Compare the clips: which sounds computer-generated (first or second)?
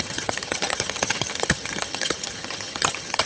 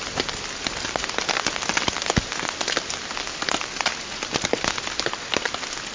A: first